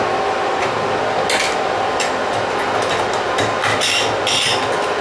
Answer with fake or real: real